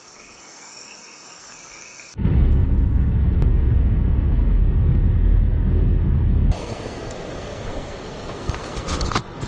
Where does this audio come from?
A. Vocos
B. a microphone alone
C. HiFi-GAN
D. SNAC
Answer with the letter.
D